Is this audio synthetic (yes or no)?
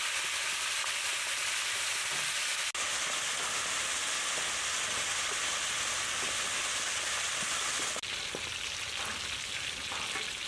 no